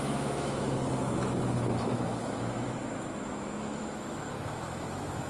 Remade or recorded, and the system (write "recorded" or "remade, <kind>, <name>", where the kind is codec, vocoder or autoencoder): remade, autoencoder, DAC-VAE